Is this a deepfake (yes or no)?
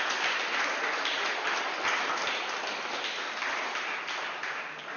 no